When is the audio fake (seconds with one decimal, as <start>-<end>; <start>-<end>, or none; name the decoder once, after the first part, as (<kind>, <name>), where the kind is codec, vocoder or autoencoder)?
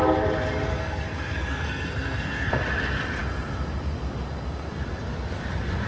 0.7-2.5 (codec, SNAC)